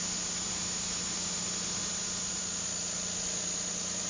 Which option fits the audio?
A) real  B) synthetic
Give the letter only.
A